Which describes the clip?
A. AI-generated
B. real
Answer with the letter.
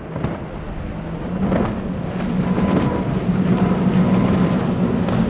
B